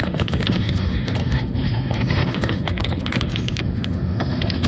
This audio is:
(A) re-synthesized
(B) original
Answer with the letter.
A